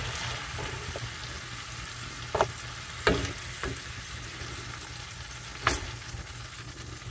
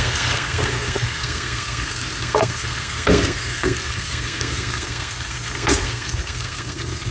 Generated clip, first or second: second